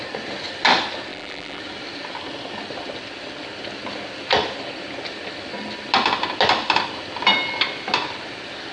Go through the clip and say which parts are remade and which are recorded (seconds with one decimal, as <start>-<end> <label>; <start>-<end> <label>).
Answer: 0.0-1.1 recorded; 1.1-1.6 remade; 1.6-8.7 recorded